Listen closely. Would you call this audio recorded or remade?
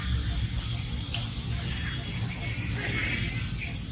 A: recorded